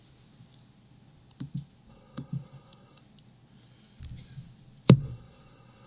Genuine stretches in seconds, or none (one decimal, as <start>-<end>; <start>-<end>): 0.0-1.9; 3.0-5.0